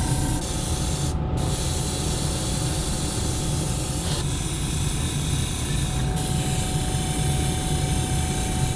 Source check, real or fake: real